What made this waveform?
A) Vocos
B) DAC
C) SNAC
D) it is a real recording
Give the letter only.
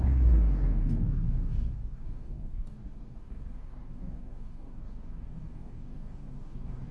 B